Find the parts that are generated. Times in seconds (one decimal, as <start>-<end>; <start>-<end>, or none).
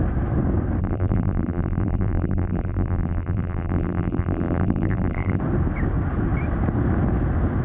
0.8-5.4